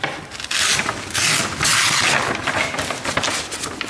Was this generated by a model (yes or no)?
no